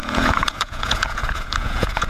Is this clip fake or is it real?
fake